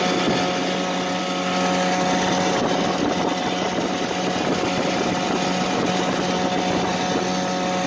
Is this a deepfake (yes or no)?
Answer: no